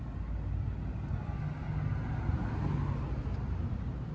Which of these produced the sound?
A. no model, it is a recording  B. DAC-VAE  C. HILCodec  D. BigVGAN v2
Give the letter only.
A